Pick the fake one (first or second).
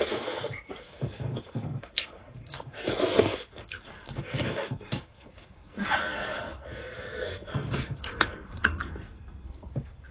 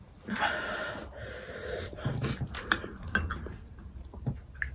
first